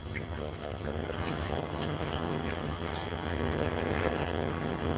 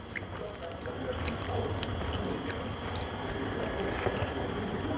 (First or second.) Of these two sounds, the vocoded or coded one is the first